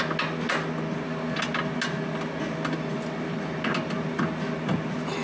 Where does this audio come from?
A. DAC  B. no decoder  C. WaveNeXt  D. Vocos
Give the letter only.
B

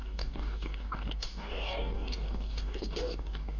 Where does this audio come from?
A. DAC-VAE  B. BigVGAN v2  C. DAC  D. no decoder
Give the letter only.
C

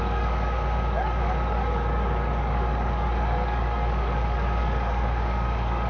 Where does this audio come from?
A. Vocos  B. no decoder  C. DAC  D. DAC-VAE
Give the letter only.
C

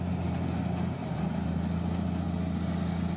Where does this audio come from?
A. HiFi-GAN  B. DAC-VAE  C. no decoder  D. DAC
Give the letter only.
C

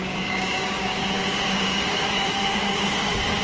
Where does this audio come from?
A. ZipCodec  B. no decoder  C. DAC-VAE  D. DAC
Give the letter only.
D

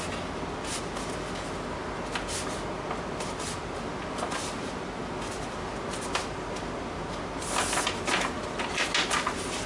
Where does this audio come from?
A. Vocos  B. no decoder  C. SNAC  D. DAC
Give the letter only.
B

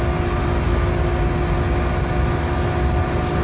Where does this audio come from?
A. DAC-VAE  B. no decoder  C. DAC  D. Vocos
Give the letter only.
B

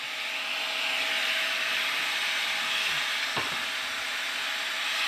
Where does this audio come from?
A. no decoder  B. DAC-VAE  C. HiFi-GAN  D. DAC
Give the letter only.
A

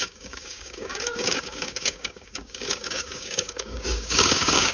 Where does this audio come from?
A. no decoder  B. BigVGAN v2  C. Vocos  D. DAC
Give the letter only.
D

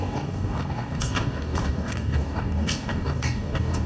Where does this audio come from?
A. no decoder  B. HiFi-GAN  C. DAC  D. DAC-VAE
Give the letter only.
C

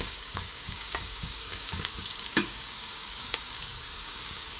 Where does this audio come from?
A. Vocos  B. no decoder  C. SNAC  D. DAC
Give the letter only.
D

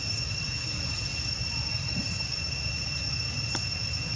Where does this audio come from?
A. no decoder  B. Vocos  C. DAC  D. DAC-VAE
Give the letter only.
A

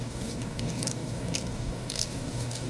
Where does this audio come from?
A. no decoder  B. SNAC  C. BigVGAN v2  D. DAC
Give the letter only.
D